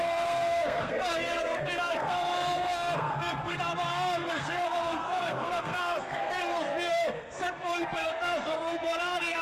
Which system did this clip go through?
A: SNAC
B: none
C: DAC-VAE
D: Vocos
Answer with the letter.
A